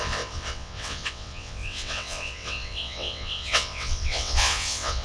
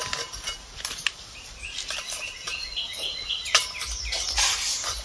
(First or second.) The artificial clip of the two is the first